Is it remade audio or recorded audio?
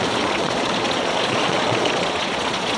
remade